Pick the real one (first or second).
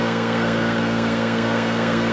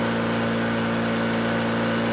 second